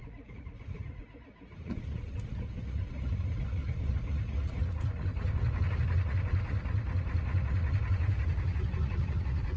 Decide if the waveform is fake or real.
fake